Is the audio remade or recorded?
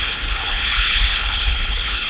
remade